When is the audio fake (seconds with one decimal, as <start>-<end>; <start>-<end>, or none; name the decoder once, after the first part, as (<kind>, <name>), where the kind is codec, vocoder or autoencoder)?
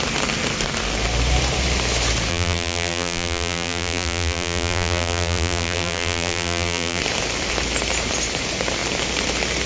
2.3-7.0 (vocoder, BigVGAN v2)